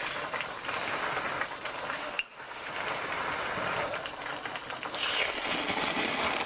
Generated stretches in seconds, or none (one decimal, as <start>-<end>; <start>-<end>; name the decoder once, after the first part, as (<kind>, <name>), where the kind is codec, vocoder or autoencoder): 2.0-2.7 (autoencoder, DAC-VAE)